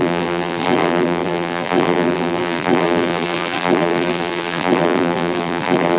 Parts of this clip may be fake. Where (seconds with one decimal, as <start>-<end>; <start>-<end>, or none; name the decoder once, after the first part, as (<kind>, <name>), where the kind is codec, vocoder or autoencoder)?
0.0-6.0 (vocoder, BigVGAN v2)